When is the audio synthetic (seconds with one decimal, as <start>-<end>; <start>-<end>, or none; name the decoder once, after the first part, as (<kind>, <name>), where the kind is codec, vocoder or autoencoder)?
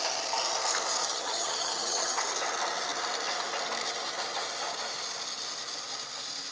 1.0-2.2 (vocoder, HiFi-GAN)